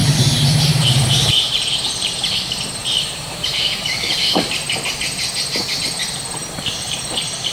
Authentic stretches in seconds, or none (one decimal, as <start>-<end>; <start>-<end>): 4.4-7.5